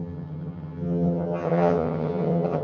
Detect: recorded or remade remade